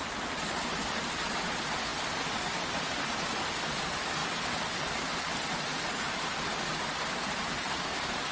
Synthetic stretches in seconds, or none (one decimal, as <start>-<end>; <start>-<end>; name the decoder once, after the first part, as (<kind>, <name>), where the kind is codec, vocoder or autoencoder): none